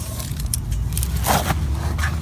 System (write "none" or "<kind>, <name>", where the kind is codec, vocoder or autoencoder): none